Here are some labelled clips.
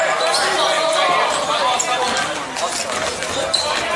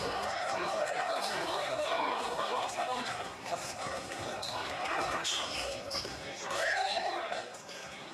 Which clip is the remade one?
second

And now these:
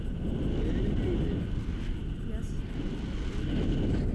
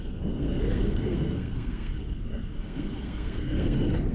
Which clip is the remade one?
second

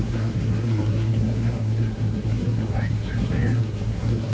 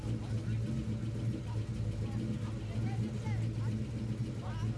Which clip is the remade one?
first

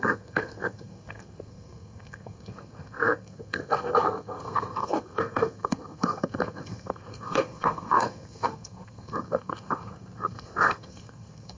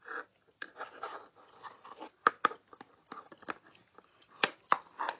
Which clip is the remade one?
first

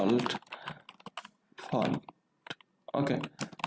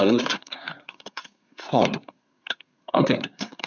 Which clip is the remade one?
second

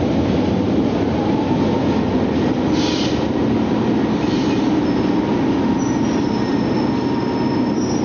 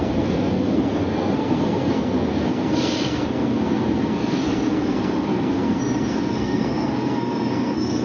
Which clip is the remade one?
second